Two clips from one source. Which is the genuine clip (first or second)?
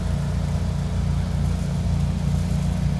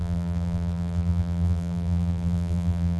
first